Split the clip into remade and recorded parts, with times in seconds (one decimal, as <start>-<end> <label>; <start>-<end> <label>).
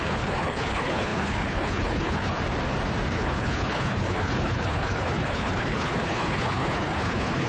0.0-2.4 remade; 2.4-3.1 recorded; 3.1-7.5 remade